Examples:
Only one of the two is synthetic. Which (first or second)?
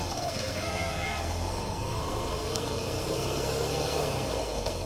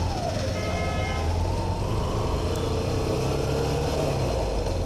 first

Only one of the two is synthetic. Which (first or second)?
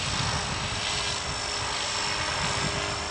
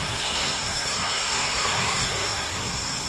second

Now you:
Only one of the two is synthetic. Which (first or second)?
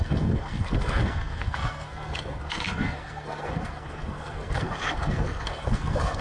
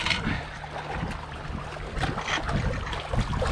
first